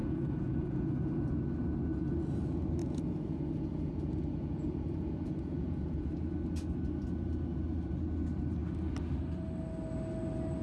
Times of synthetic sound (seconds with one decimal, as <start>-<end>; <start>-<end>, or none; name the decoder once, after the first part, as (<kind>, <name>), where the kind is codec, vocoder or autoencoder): 0.0-1.4 (vocoder, Vocos); 2.8-6.1